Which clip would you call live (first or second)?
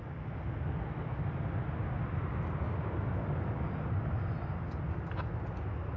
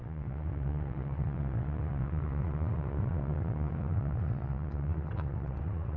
first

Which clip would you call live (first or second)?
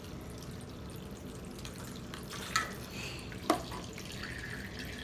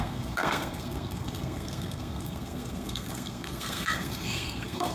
first